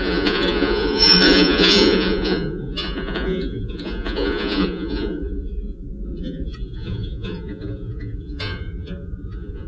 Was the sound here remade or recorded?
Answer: remade